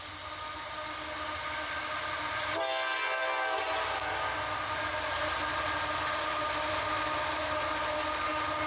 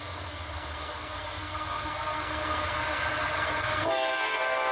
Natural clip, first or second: first